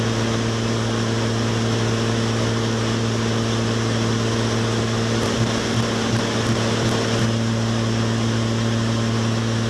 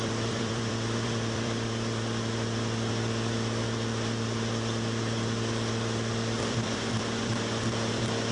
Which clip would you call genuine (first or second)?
first